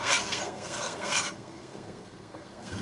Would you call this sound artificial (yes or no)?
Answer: yes